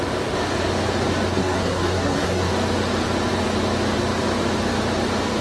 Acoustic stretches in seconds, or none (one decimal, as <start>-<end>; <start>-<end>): 0.0-1.3; 2.5-5.4

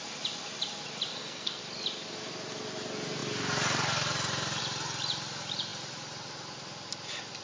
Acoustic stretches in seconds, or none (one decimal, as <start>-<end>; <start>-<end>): 0.0-1.1; 1.6-7.4

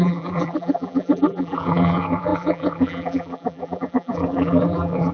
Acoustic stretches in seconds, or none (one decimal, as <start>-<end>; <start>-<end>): none

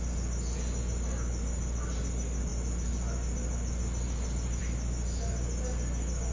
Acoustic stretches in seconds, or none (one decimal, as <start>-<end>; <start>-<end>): 0.0-6.3

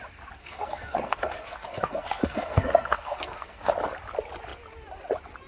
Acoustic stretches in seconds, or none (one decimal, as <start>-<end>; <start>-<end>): 0.0-0.4; 3.7-5.5